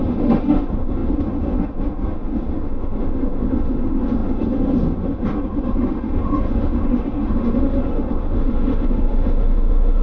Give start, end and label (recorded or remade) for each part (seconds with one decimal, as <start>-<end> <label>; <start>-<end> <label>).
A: 0.0-10.0 remade